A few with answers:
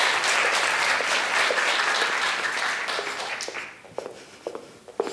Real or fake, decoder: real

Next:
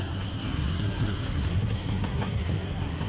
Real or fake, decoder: fake, codec, SNAC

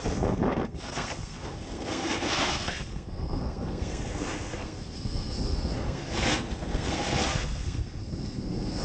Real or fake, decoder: fake, codec, SNAC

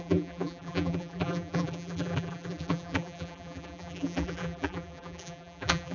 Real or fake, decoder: fake, vocoder, BigVGAN v2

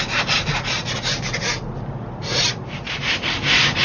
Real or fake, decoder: real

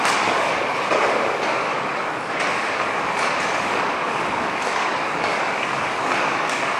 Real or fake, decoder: fake, codec, DAC